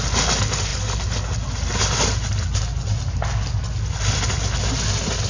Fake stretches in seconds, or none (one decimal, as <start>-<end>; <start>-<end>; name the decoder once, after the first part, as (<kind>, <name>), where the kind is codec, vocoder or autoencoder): none